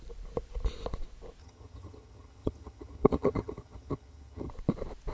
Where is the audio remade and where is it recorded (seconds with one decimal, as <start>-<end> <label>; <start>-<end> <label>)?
0.0-1.4 recorded; 1.4-4.5 remade; 4.5-5.1 recorded